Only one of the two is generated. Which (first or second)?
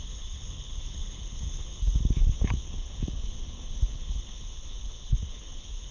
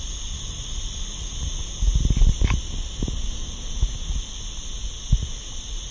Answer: first